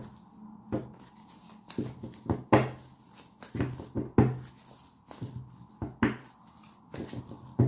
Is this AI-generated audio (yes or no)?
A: no